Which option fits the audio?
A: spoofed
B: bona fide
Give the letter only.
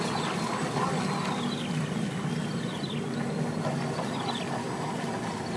B